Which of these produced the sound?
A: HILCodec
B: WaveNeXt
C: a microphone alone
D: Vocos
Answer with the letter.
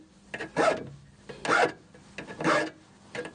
C